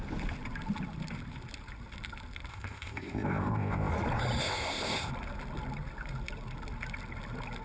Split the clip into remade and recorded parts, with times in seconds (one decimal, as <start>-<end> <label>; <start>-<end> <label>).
0.0-2.5 recorded; 2.5-3.9 remade; 3.9-4.4 recorded; 4.4-5.1 remade; 5.1-7.6 recorded